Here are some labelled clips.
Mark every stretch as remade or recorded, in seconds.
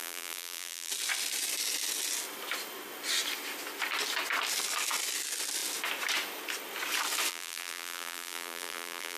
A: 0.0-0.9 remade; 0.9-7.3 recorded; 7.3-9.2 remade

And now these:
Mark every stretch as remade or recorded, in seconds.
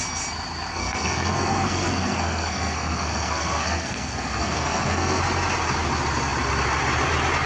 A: 0.0-0.7 recorded; 0.7-5.2 remade; 5.2-7.5 recorded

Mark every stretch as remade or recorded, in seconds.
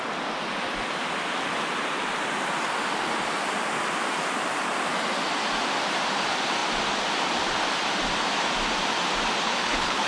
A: 0.0-9.4 recorded; 9.4-10.1 remade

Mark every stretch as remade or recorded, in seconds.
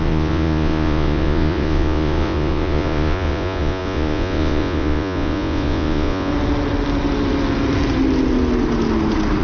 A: 0.0-6.3 remade; 6.3-9.4 recorded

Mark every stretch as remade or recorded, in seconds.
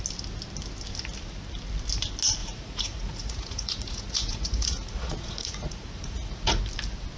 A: 0.0-2.4 recorded; 2.4-6.6 remade; 6.6-7.2 recorded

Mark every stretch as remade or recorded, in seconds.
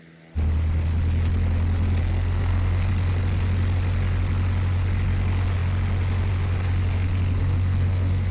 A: 0.0-2.0 recorded; 2.0-2.9 remade; 2.9-7.4 recorded; 7.4-8.3 remade